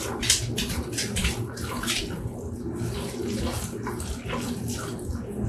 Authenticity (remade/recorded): recorded